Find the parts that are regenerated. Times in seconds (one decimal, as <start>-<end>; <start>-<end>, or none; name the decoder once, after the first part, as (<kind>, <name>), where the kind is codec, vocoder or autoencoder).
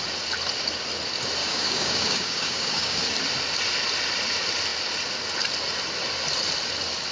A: 1.4-3.0 (codec, DAC)